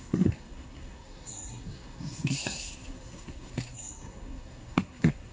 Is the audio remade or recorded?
remade